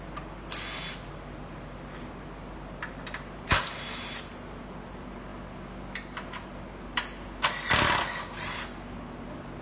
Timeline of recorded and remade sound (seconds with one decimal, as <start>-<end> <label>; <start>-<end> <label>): 0.0-9.6 recorded

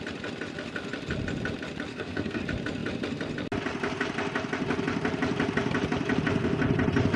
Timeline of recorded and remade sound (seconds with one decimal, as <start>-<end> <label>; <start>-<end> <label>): 0.0-1.9 recorded; 1.9-2.4 remade; 2.4-7.2 recorded